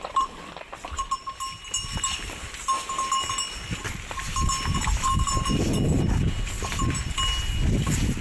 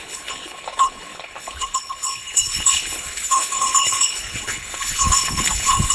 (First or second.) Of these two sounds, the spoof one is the second